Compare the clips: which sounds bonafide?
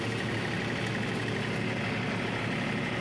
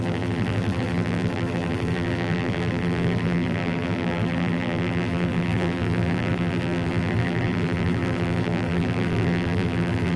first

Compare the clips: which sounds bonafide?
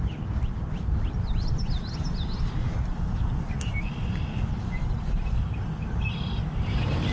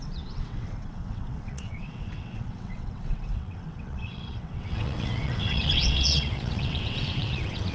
first